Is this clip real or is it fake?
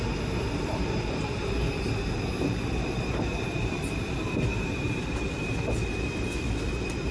fake